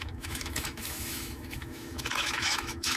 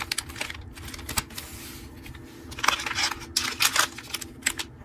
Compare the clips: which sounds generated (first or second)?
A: first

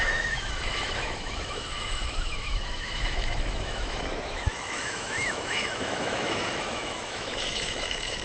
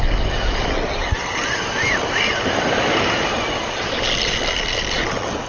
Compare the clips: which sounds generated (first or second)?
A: first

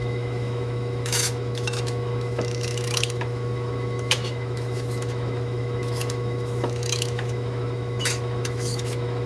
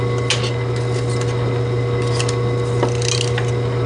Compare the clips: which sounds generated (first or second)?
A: first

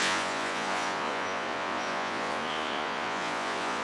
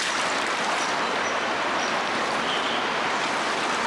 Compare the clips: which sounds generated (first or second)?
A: first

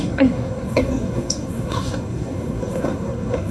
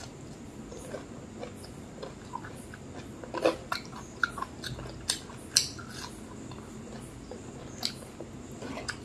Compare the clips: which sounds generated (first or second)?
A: first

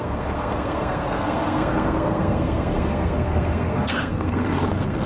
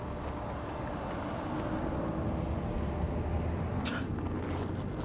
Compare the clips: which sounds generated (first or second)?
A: first